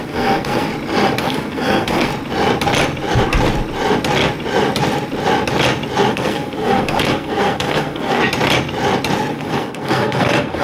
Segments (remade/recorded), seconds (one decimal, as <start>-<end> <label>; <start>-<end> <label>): 0.0-0.7 remade; 0.7-1.2 recorded; 1.2-2.1 remade; 2.1-6.1 recorded; 6.1-8.2 remade; 8.2-9.3 recorded; 9.3-10.6 remade